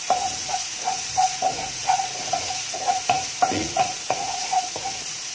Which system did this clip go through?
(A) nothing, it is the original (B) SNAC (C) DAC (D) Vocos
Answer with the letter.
D